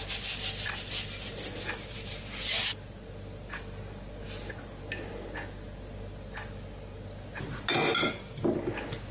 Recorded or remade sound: recorded